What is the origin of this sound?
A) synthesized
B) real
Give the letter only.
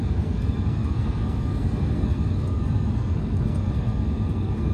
A